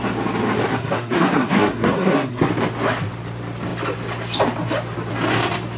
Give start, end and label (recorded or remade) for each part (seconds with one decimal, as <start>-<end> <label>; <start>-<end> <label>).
0.0-0.7 recorded; 0.7-2.5 remade; 2.5-5.8 recorded